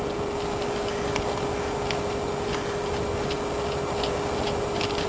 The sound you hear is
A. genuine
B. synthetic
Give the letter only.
A